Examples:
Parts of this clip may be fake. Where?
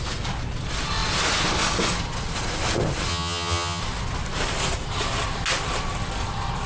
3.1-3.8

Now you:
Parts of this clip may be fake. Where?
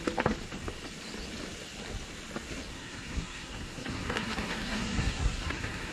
2.7-5.9